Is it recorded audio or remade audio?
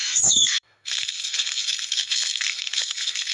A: remade